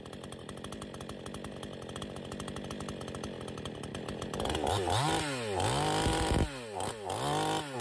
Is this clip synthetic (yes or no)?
no